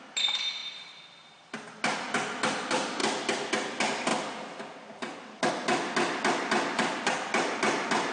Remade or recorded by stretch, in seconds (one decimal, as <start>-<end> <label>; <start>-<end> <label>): 0.0-0.6 recorded; 0.6-1.7 remade; 1.7-3.0 recorded; 3.0-3.5 remade; 3.5-8.1 recorded